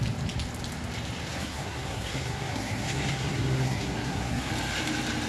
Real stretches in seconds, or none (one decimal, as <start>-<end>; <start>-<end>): 0.0-1.3; 4.5-5.3